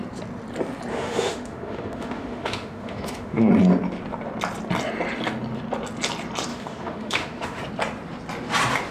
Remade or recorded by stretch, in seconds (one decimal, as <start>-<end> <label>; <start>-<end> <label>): 0.0-0.9 recorded; 0.9-3.5 remade; 3.5-6.5 recorded; 6.5-7.6 remade; 7.6-8.9 recorded